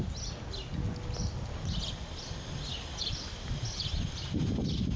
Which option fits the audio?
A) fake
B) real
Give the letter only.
B